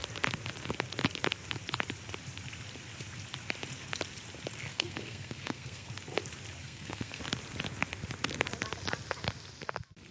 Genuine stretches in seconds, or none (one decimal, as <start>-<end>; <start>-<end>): 0.0-4.7; 5.9-6.6; 7.2-10.1